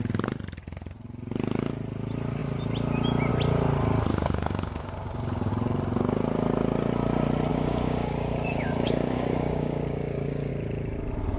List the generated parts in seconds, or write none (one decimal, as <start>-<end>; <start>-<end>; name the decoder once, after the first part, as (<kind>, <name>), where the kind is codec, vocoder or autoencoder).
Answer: 4.1-5.5 (codec, DAC); 7.5-10.5